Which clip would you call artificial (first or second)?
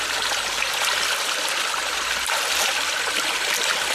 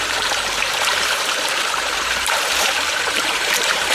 second